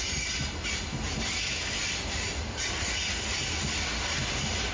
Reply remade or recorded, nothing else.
recorded